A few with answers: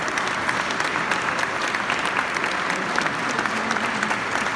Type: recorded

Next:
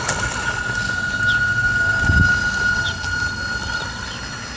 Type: recorded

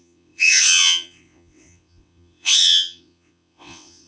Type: remade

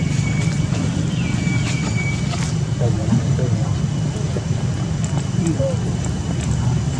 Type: recorded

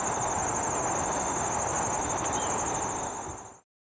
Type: recorded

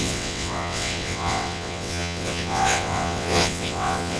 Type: remade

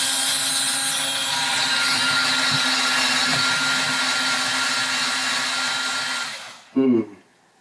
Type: recorded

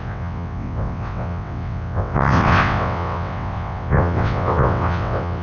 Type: remade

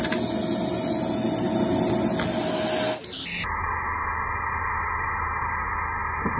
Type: recorded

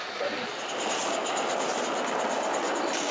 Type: recorded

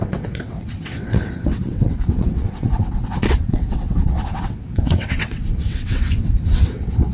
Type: remade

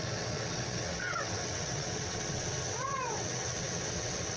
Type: remade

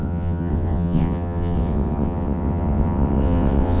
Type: remade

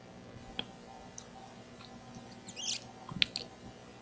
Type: recorded